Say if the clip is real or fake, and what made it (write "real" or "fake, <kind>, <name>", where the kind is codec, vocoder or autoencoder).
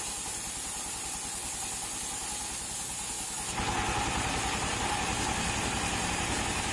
real